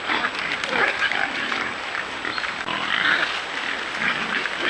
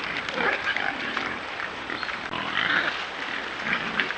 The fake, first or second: second